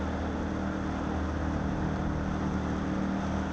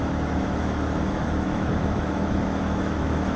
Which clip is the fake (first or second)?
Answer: second